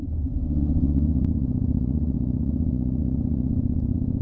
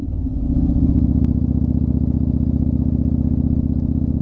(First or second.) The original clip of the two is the second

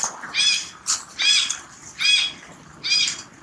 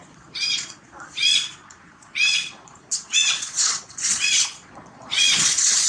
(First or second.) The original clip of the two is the first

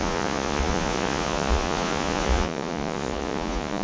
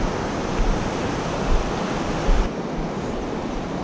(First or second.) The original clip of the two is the second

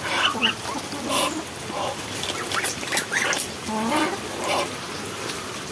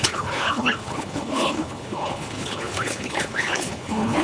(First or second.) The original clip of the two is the first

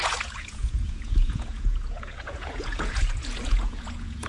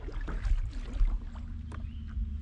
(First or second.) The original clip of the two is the second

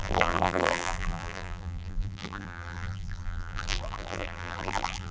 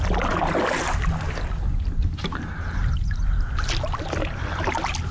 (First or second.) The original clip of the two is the second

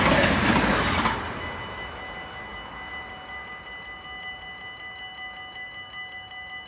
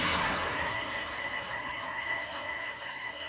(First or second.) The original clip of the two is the first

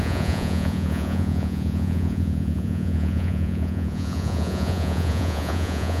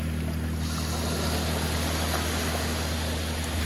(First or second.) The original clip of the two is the second